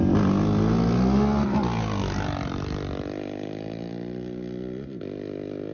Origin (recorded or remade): recorded